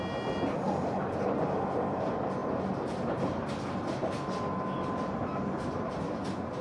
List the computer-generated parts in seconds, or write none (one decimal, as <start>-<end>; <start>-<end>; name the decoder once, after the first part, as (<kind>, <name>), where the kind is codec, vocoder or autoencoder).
none